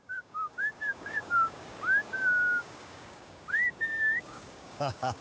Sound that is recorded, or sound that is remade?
remade